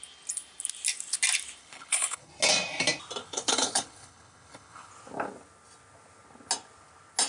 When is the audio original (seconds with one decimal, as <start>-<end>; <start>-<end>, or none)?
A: 0.0-1.6; 2.3-3.2; 4.9-7.3